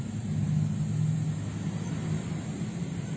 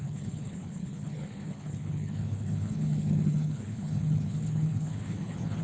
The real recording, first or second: first